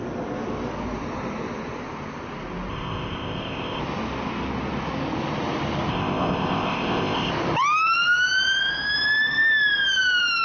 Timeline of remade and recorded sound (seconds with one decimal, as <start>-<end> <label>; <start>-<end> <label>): 0.0-2.7 recorded; 2.7-3.8 remade; 3.8-5.9 recorded; 5.9-7.3 remade; 7.3-10.4 recorded